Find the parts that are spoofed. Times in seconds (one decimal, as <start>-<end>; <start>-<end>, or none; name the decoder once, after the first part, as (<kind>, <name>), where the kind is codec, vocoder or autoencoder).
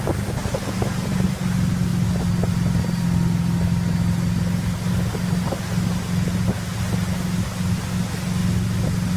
0.4-1.3 (vocoder, BigVGAN v2)